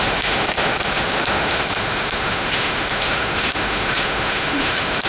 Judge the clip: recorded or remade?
remade